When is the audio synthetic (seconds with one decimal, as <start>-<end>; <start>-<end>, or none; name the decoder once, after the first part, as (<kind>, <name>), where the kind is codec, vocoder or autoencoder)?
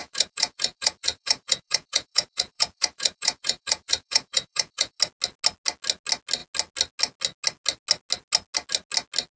0.0-5.0 (vocoder, Vocos)